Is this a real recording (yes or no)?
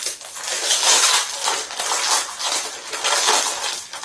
yes